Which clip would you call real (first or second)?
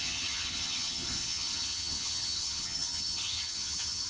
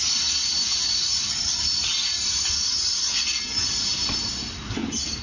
second